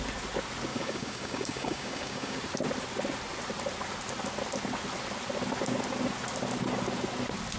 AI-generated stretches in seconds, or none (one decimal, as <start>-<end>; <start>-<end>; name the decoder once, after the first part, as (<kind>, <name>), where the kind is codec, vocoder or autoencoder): 0.7-2.4 (codec, DAC)